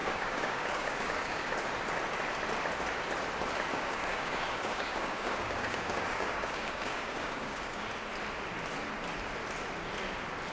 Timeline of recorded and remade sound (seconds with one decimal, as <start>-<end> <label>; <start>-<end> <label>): 0.0-1.5 remade; 1.5-3.7 recorded; 3.7-7.8 remade; 7.8-10.5 recorded